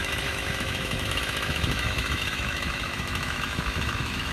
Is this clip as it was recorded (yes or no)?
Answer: no